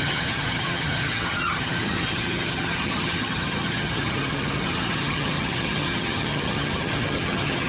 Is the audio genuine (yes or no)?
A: no